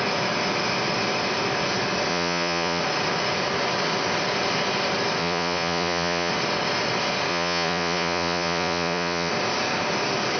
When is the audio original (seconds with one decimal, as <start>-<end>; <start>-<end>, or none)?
0.0-2.1; 2.8-5.2; 6.3-7.3; 9.3-10.4